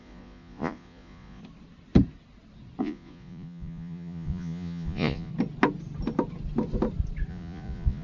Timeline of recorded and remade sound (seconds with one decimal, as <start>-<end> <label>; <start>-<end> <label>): 0.0-1.4 remade; 1.4-2.8 recorded; 2.8-5.3 remade; 5.3-7.3 recorded; 7.3-8.0 remade